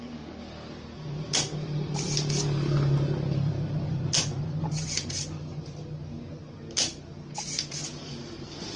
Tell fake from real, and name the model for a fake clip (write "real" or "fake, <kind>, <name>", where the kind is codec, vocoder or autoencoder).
real